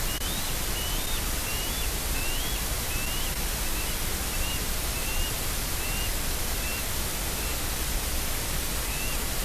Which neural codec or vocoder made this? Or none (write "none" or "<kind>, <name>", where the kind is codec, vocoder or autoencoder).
vocoder, BigVGAN v2